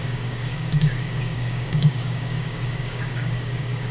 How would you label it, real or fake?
fake